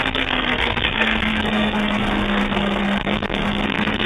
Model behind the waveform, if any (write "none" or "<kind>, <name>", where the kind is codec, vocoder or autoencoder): codec, SNAC